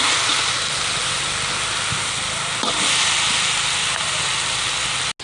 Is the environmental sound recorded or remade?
recorded